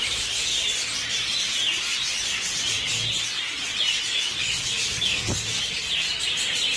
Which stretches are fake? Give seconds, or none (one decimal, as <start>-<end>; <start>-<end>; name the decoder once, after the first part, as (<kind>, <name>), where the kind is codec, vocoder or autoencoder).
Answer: 4.4-5.6 (codec, DAC)